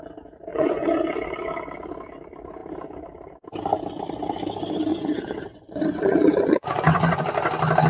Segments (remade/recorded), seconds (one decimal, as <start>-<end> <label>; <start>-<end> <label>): 0.0-0.5 recorded; 0.5-1.0 remade; 1.0-4.9 recorded; 4.9-7.2 remade; 7.2-7.9 recorded